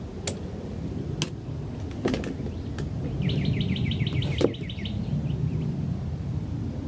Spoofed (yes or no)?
no